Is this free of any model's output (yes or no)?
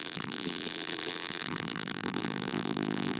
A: no